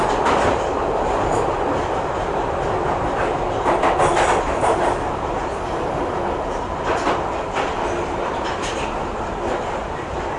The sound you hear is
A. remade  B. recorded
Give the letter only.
B